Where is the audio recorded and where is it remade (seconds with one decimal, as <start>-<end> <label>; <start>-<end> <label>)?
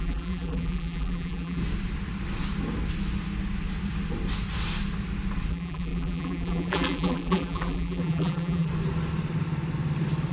0.0-1.6 remade; 1.6-5.5 recorded; 5.5-8.7 remade; 8.7-10.3 recorded